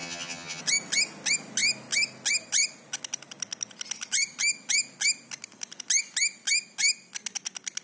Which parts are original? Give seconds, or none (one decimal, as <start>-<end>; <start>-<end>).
0.6-7.8